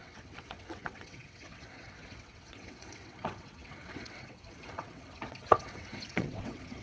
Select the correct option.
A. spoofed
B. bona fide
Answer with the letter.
A